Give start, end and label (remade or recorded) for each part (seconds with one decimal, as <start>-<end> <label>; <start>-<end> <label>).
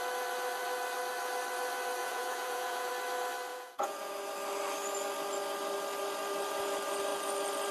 0.0-2.0 recorded; 2.0-2.9 remade; 2.9-3.5 recorded; 3.5-4.1 remade; 4.1-7.7 recorded